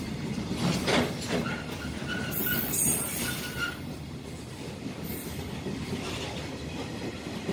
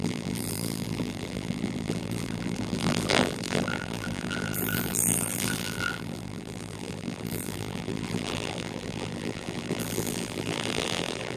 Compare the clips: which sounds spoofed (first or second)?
second